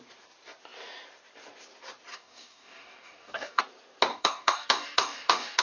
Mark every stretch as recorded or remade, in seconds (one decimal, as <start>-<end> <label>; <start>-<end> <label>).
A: 0.0-2.1 recorded; 2.1-3.6 remade; 3.6-4.1 recorded; 4.1-5.6 remade